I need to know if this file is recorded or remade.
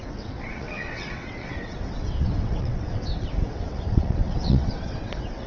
remade